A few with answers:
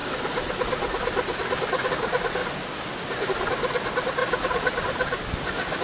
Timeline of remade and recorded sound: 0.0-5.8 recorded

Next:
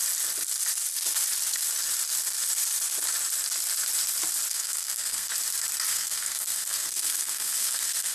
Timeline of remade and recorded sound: 0.0-4.5 recorded; 4.5-5.3 remade; 5.3-5.9 recorded; 5.9-8.1 remade

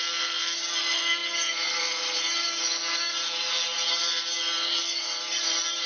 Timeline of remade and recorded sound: 0.0-5.9 recorded